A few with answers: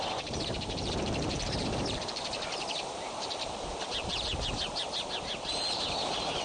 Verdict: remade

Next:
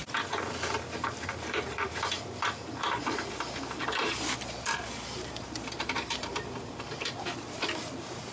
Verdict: remade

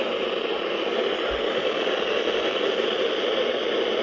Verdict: recorded